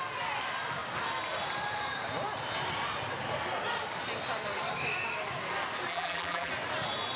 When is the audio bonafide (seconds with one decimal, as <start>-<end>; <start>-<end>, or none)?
0.0-5.9; 6.5-7.2